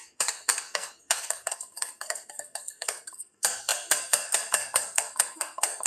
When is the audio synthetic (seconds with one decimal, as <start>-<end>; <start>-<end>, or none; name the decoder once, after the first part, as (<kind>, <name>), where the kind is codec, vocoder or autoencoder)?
0.0-5.9 (codec, SNAC)